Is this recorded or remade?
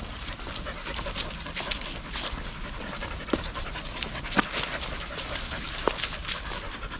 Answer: recorded